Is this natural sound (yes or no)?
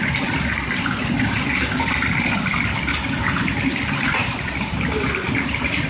yes